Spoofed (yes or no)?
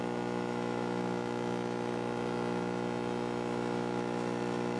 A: yes